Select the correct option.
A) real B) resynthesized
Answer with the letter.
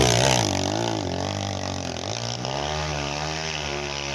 A